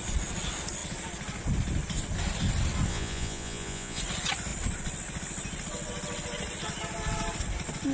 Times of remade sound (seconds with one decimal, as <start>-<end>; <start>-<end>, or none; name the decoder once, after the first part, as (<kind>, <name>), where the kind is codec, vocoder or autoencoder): 2.9-4.0 (vocoder, Vocos)